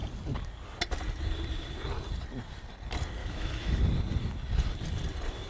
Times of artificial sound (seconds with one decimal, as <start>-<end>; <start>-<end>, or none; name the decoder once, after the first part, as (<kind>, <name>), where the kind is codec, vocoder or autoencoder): 3.2-3.8 (autoencoder, DAC-VAE)